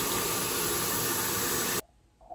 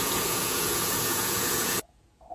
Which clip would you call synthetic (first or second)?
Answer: second